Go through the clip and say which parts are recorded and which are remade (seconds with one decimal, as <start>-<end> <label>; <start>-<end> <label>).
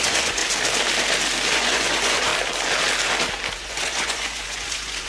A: 0.0-0.4 remade; 0.4-1.5 recorded; 1.5-2.3 remade; 2.3-3.6 recorded; 3.6-5.1 remade